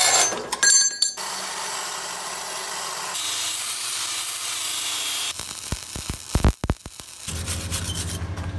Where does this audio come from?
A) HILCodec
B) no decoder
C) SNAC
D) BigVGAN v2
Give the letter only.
B